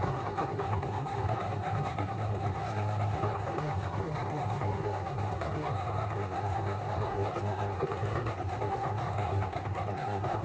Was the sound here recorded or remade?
remade